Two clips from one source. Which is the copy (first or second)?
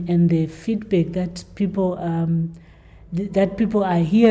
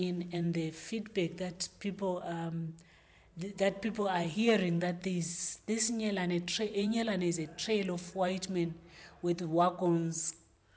second